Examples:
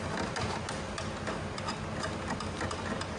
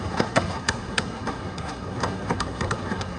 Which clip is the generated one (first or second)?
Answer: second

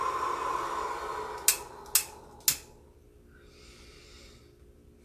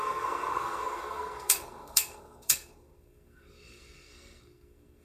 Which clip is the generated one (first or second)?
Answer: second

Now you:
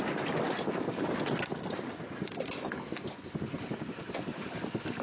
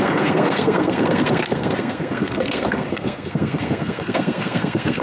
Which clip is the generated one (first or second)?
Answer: second